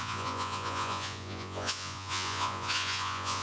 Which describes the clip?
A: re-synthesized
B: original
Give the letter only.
A